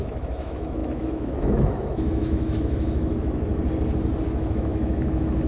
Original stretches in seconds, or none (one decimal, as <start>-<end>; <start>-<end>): 3.5-4.2